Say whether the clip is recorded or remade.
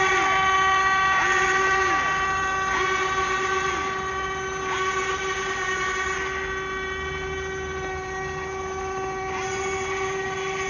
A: recorded